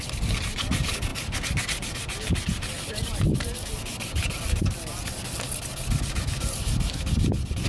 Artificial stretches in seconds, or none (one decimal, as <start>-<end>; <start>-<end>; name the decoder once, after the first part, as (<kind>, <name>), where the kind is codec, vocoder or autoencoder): none